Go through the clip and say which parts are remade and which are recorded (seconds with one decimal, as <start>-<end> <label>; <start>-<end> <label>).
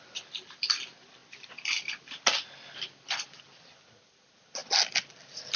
0.0-5.6 recorded